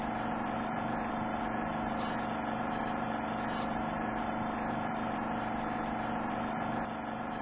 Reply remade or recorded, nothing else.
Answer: recorded